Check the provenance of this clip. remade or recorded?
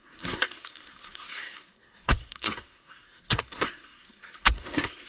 remade